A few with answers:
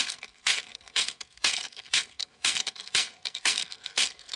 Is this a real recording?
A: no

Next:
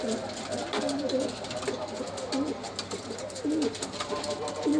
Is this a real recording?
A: yes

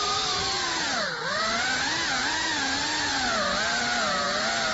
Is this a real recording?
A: yes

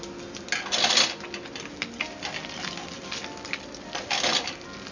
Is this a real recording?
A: yes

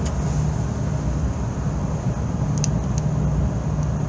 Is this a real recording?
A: yes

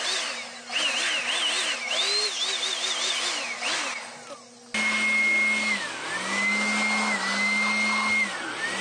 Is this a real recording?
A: yes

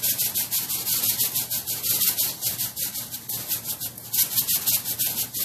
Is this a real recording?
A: yes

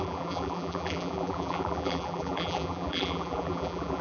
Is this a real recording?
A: no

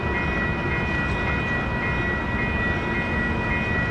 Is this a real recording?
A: yes